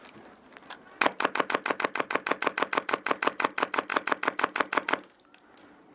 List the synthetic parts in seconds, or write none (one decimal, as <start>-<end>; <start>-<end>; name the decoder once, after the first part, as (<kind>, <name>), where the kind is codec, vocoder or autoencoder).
none